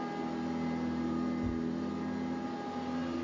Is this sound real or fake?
real